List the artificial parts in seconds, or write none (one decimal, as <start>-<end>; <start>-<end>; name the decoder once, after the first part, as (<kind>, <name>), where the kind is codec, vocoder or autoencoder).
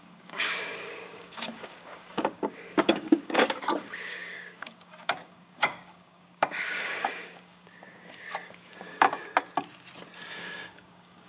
0.0-9.2 (codec, DAC); 10.3-11.3